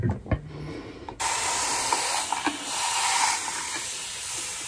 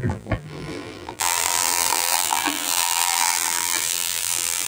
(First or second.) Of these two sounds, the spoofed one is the second